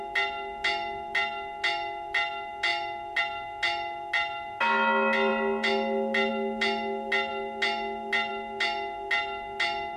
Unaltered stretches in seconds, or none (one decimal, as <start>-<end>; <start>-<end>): 0.0-10.0